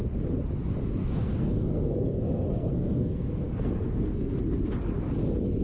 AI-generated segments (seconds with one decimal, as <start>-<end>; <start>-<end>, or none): 1.0-4.4